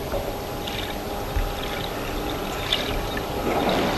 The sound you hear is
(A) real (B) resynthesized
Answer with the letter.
A